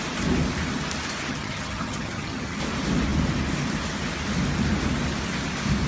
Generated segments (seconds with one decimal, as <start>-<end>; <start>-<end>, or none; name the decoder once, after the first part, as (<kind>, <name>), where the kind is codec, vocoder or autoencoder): 1.3-2.6 (vocoder, HiFi-GAN)